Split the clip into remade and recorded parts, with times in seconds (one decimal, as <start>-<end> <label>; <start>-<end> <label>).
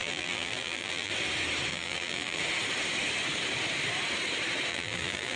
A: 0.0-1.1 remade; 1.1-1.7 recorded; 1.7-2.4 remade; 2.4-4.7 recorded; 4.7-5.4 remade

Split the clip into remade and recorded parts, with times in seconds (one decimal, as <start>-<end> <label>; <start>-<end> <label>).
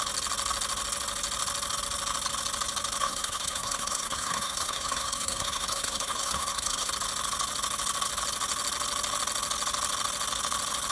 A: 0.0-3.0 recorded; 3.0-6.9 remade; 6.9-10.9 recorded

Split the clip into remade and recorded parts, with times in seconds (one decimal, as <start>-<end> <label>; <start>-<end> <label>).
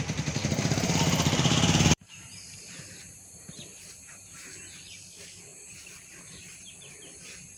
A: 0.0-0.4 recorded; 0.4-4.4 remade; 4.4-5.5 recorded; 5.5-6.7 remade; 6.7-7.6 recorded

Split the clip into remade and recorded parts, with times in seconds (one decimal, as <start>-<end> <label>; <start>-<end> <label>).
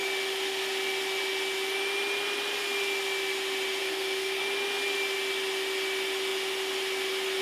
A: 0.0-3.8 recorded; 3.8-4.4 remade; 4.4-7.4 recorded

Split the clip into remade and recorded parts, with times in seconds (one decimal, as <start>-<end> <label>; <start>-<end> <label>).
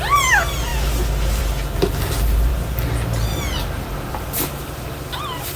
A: 0.0-5.6 recorded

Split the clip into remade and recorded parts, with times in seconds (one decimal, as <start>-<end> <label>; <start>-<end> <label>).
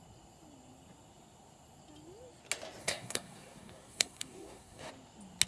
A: 0.0-2.8 recorded; 2.8-4.9 remade; 4.9-5.5 recorded